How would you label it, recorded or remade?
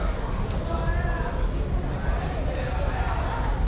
recorded